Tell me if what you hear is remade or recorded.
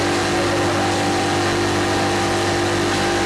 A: recorded